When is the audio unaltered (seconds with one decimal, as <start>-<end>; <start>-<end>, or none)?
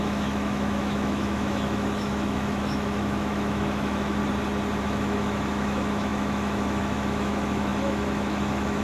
4.2-4.8